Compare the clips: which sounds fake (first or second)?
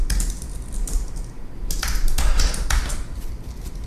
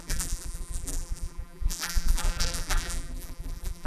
second